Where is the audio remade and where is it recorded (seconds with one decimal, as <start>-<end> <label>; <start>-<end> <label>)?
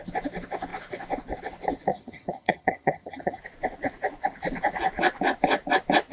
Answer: 0.0-1.9 recorded; 1.9-3.4 remade; 3.4-6.1 recorded